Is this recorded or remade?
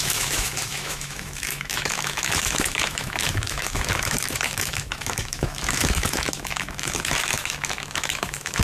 remade